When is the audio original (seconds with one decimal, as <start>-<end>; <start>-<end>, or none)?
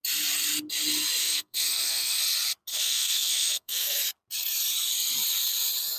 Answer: 0.0-1.2; 2.2-2.7; 4.0-6.0